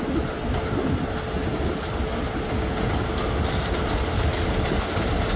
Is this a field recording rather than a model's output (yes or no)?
yes